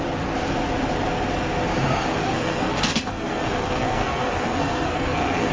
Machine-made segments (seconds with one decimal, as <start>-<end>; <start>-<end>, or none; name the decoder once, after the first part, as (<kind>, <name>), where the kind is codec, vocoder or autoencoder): 2.2-5.5 (codec, SNAC)